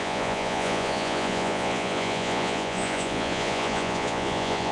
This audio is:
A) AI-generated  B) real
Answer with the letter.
A